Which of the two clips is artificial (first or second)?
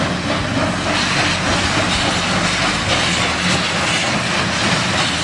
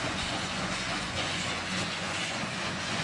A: second